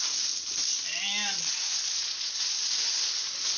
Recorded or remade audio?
recorded